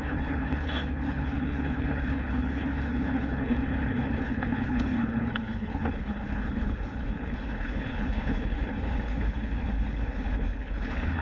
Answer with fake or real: fake